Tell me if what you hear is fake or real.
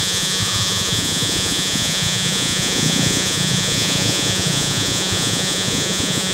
fake